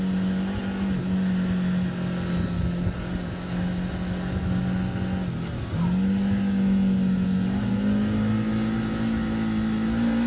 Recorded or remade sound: recorded